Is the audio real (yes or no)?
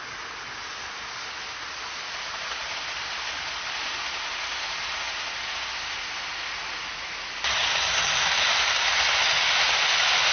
yes